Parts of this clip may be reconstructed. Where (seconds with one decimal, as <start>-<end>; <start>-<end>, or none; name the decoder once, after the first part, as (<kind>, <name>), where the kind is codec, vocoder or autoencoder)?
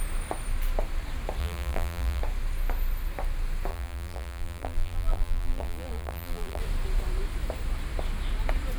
1.4-2.2 (vocoder, BigVGAN v2); 3.7-6.6